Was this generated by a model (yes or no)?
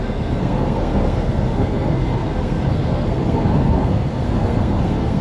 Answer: yes